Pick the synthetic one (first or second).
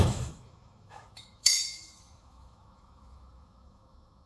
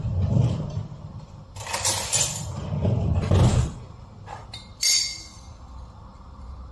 first